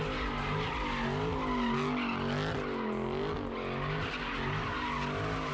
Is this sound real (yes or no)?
yes